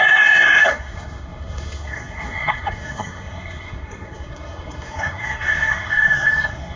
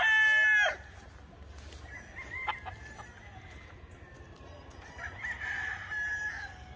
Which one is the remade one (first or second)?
first